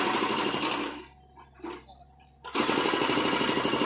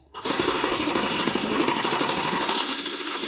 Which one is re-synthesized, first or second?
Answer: second